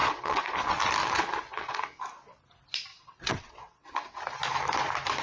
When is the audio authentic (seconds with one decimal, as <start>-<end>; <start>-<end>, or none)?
0.5-1.0; 2.0-2.9; 4.2-5.2